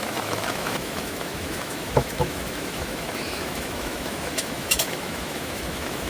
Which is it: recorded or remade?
remade